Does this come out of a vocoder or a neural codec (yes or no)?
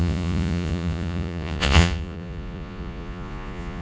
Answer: yes